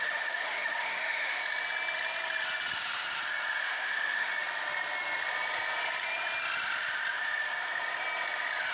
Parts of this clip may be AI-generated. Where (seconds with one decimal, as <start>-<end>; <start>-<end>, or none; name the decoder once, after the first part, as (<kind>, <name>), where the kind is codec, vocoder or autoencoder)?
0.0-1.4 (autoencoder, DAC-VAE); 3.6-4.3